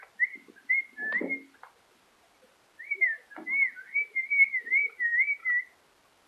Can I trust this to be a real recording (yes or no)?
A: yes